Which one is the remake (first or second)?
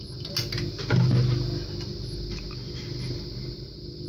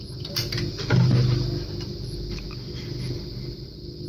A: second